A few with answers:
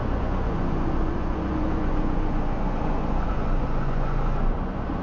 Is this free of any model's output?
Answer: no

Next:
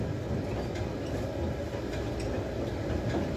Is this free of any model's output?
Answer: yes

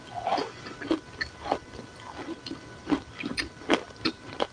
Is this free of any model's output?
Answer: yes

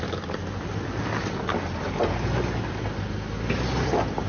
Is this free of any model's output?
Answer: yes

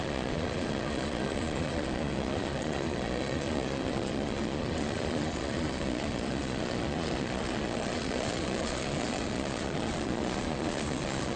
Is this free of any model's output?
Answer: no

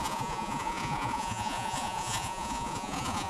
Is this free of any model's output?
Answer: no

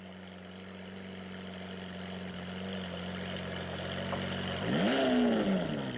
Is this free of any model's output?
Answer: yes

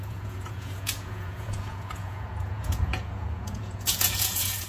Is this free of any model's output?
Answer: no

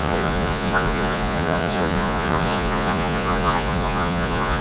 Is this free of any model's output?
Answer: no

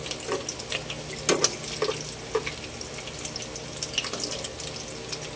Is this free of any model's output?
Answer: yes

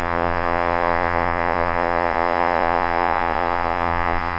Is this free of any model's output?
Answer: no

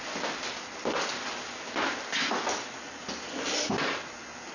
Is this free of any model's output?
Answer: yes